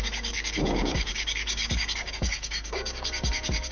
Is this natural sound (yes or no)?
no